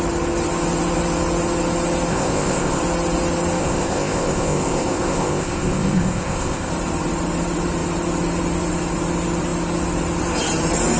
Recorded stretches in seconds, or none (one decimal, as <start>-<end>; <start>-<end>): 0.0-2.1; 2.8-3.6; 6.7-11.0